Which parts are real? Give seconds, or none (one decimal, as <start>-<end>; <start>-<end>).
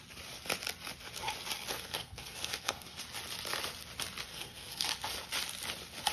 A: 0.0-1.7; 3.0-4.3; 4.9-6.1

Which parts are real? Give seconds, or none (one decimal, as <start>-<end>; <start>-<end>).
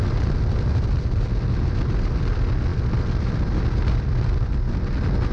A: 0.0-5.3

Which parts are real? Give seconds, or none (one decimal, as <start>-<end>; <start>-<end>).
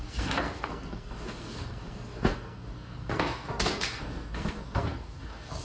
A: none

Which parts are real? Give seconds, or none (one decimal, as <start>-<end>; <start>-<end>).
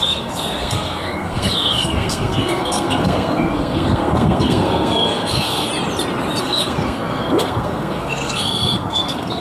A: 5.7-6.4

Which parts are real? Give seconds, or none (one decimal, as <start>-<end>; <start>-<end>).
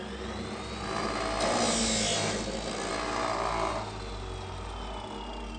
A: 0.0-5.6